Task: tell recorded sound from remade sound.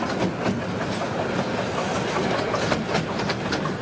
recorded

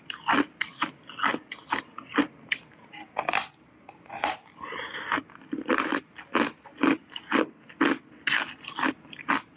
recorded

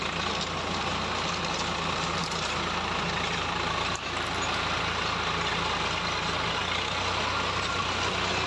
recorded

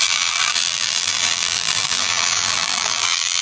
remade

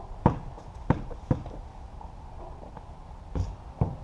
remade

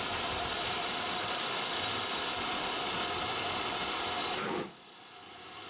remade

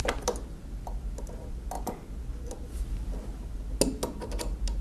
recorded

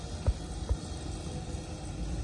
recorded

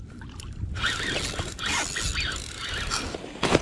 recorded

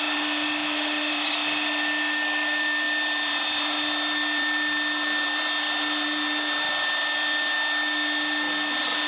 recorded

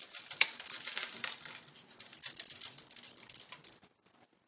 remade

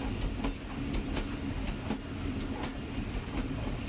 recorded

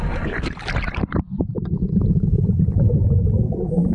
remade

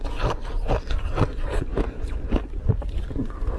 remade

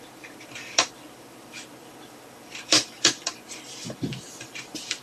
remade